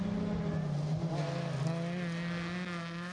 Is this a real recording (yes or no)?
yes